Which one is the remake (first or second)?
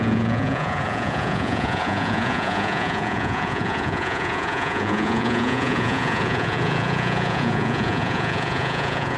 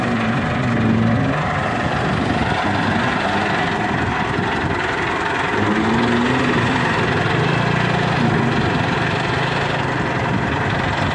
first